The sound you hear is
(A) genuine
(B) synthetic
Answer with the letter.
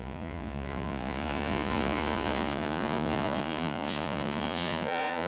B